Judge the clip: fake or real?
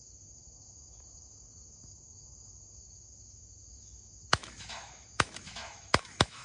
fake